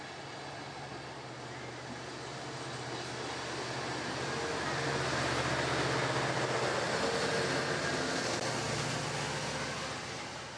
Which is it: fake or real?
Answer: real